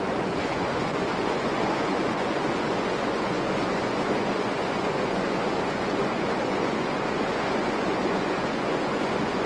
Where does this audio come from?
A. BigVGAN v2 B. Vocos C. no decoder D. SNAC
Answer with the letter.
B